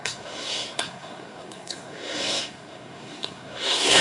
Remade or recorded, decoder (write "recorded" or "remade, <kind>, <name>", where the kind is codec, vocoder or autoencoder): remade, codec, SNAC